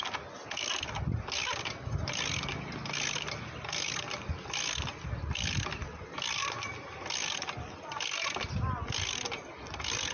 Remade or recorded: recorded